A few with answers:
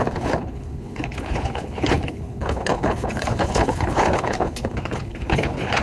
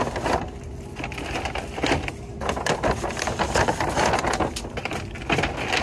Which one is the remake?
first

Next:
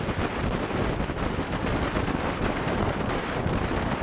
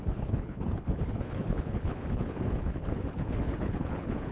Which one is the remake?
second